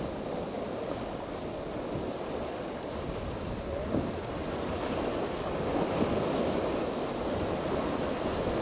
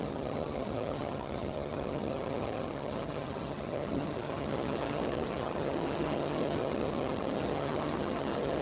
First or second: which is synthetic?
second